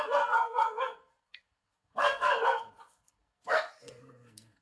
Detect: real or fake fake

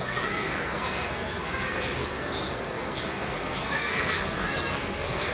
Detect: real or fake fake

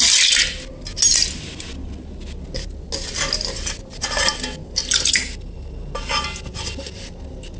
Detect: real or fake real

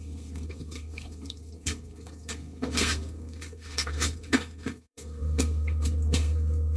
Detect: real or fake fake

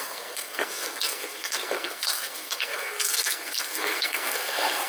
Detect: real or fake fake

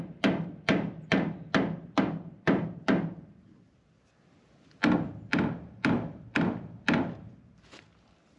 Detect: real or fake real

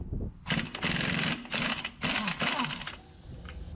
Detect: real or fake real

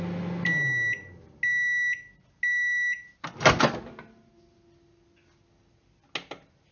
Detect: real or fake real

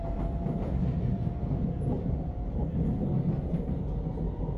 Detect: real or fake real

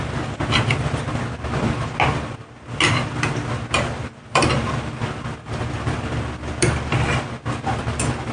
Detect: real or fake real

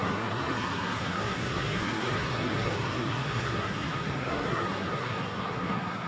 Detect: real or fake fake